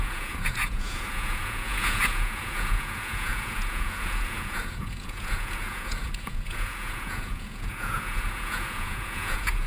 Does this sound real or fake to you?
fake